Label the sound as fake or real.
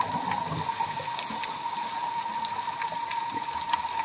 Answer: real